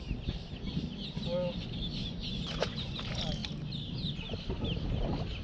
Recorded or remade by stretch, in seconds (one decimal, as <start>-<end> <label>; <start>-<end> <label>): 0.0-2.0 recorded; 2.0-3.0 remade; 3.0-5.4 recorded